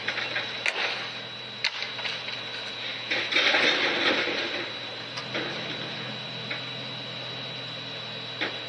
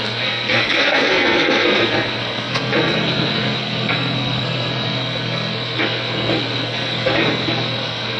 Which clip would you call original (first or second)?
first